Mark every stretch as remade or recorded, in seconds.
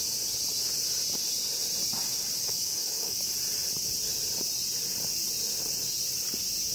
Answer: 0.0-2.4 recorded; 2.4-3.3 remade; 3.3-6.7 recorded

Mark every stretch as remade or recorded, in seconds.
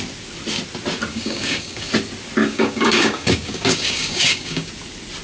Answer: 0.0-1.1 recorded; 1.1-1.9 remade; 1.9-2.4 recorded; 2.4-4.7 remade; 4.7-5.2 recorded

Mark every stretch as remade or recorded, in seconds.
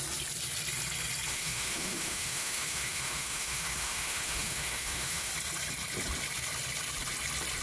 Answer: 0.0-1.3 recorded; 1.3-5.3 remade; 5.3-7.6 recorded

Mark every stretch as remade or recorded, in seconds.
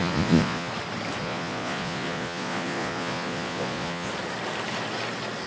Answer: 0.0-0.7 remade; 0.7-1.2 recorded; 1.2-4.1 remade; 4.1-5.5 recorded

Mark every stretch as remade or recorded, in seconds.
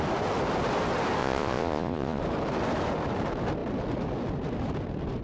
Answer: 0.0-1.2 recorded; 1.2-2.2 remade; 2.2-5.2 recorded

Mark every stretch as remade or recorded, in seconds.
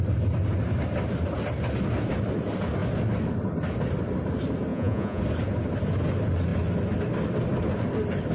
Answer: 0.0-4.7 recorded; 4.7-5.2 remade; 5.2-8.3 recorded